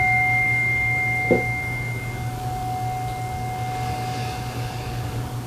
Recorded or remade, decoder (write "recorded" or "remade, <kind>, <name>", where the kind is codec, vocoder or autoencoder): remade, codec, DAC